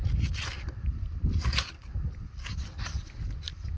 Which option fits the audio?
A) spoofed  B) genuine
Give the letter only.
B